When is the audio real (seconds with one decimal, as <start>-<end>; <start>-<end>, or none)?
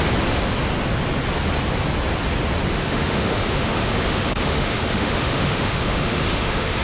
0.0-2.7